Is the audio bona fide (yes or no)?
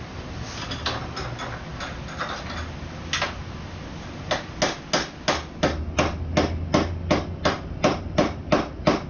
yes